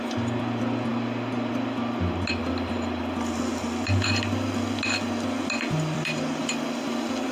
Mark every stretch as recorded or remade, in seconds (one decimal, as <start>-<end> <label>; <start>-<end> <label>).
0.0-2.4 recorded; 2.4-3.0 remade; 3.0-7.3 recorded